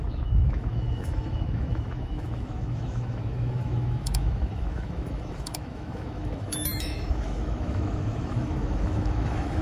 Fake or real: fake